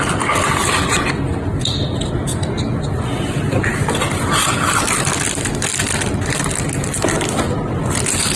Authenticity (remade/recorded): recorded